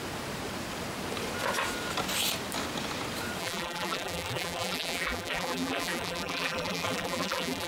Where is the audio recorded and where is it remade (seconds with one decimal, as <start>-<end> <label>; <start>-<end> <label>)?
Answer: 0.0-3.4 recorded; 3.4-7.7 remade